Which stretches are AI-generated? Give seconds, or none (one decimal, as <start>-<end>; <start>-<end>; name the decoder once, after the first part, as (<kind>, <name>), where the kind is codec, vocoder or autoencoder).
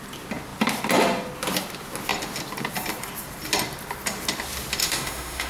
4.8-5.5 (autoencoder, DAC-VAE)